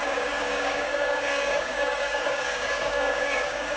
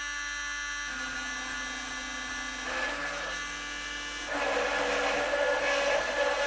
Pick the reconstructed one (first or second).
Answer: first